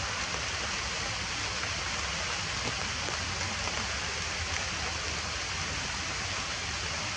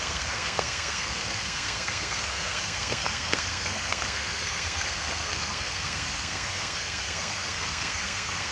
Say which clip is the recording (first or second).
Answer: first